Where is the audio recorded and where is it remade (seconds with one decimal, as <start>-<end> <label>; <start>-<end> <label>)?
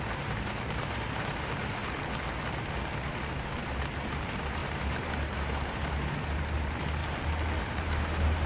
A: 0.0-1.8 remade; 1.8-3.4 recorded; 3.4-7.0 remade; 7.0-7.6 recorded; 7.6-8.5 remade